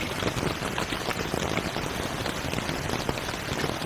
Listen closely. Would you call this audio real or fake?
real